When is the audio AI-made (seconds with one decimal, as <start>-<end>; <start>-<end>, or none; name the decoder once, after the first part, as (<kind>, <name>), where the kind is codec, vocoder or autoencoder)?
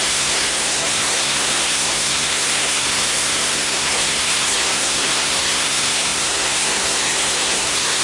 0.0-8.0 (codec, SNAC)